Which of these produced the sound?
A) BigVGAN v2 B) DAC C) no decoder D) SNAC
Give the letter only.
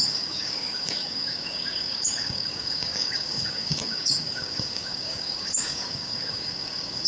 B